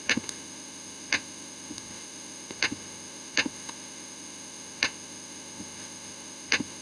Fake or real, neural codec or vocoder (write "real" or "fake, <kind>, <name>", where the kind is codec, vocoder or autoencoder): fake, autoencoder, DAC-VAE